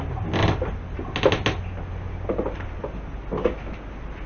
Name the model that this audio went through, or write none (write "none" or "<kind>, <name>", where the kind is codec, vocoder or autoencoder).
none